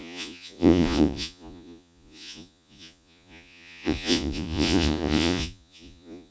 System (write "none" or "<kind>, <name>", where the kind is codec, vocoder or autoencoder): vocoder, Vocos